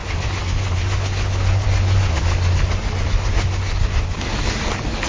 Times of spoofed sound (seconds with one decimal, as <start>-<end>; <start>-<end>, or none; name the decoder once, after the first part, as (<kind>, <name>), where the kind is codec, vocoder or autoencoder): none